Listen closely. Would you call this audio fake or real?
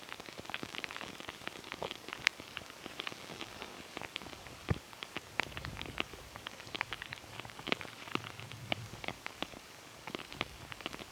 fake